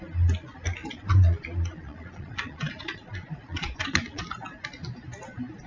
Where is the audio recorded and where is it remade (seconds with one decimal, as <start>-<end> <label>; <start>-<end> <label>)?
0.0-0.8 recorded; 0.8-4.2 remade; 4.2-5.7 recorded